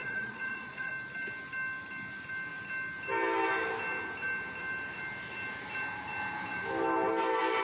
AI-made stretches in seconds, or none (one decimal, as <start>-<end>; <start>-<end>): 0.0-0.9